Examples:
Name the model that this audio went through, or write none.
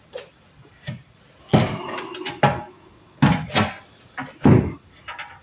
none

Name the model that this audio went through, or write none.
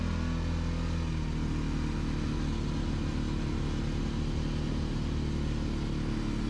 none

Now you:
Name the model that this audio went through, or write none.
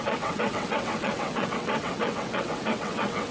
vocoder, WaveNeXt